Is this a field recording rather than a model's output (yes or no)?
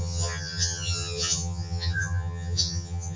no